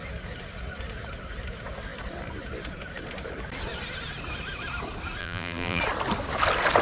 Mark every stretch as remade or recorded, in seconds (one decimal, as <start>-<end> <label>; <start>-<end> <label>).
0.0-5.2 recorded; 5.2-5.8 remade; 5.8-6.8 recorded